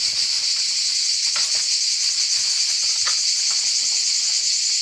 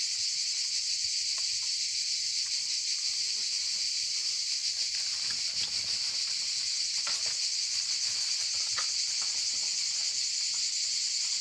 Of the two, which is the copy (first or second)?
second